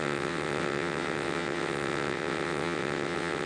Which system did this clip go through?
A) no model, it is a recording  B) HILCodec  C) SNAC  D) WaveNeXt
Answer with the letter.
D